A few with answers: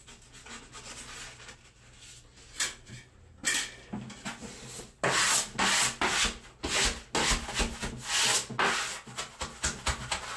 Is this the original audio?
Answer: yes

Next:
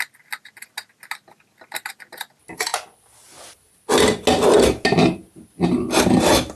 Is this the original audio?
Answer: yes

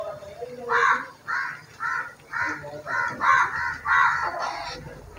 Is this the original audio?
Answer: yes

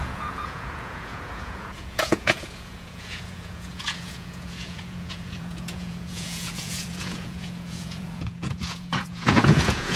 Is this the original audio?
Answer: no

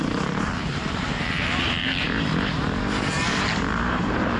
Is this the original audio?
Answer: no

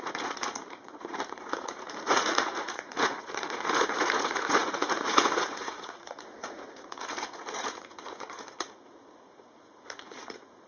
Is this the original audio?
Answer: no